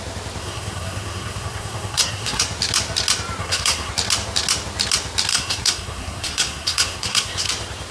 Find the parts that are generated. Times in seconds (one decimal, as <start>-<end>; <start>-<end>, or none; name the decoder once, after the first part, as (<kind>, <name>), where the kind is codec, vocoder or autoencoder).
0.4-2.4 (codec, SNAC); 3.4-3.9; 5.3-7.5